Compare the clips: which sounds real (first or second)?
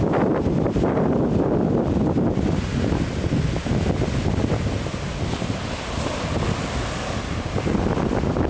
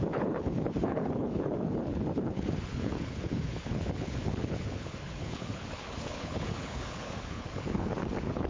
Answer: first